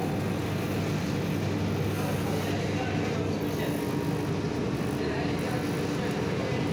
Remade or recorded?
recorded